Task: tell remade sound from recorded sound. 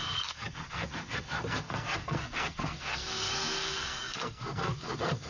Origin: remade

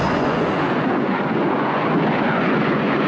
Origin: remade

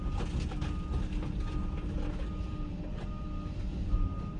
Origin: recorded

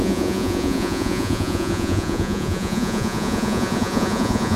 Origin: remade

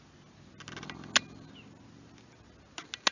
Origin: recorded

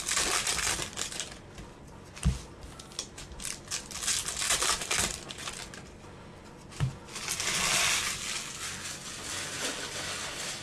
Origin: recorded